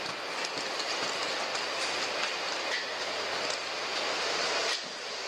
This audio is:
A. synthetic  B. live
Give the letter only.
B